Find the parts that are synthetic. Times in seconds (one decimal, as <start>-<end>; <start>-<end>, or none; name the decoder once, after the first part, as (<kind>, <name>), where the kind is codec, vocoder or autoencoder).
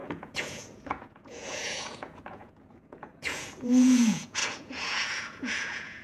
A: 0.0-6.0 (vocoder, Vocos)